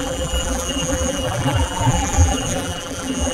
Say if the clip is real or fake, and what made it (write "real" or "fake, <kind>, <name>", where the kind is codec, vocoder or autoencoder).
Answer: fake, vocoder, BigVGAN v2